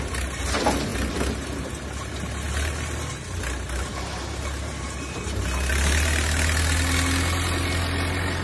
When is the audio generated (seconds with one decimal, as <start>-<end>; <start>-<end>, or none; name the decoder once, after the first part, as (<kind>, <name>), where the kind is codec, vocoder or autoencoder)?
3.9-5.4 (vocoder, BigVGAN v2)